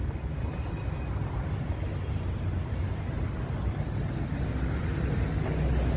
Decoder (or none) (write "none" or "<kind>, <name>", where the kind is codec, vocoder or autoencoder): none